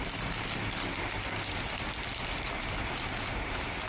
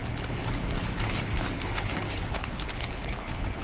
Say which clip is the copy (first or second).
second